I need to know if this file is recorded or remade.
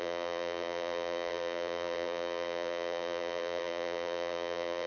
remade